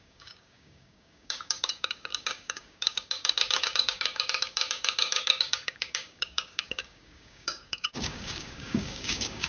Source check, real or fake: fake